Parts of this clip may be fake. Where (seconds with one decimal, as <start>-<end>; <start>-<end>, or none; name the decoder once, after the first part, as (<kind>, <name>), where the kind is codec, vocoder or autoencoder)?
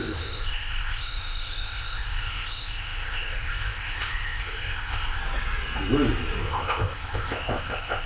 0.0-5.2 (codec, ZipCodec); 6.4-8.1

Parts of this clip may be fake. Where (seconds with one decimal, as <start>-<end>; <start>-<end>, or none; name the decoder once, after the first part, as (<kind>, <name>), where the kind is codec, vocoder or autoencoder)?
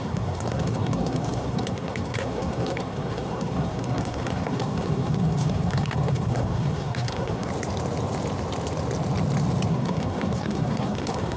0.0-7.5 (codec, SNAC); 9.7-11.4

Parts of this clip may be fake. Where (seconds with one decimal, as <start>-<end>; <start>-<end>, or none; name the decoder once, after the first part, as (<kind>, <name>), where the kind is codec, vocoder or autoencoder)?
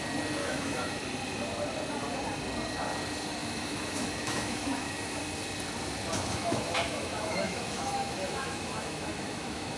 0.4-1.0 (autoencoder, DAC-VAE); 3.4-5.2; 6.1-9.8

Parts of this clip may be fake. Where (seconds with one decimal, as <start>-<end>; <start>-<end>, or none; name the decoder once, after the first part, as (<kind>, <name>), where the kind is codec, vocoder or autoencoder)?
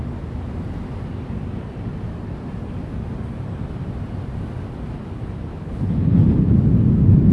5.5-6.5 (codec, HILCodec)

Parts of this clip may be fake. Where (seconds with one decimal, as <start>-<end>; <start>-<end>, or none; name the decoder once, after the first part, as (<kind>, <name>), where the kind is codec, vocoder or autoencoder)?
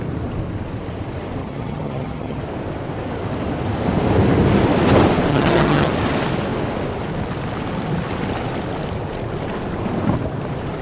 1.4-2.4 (vocoder, HiFi-GAN); 5.3-5.9